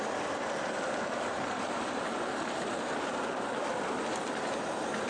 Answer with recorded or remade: remade